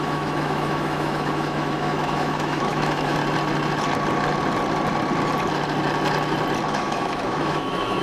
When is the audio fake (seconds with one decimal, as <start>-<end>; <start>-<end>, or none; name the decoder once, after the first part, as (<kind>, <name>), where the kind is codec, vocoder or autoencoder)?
0.0-3.2 (autoencoder, DAC-VAE); 6.7-8.0